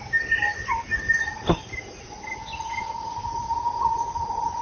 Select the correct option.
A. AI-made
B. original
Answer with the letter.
B